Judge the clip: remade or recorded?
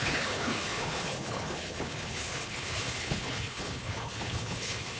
remade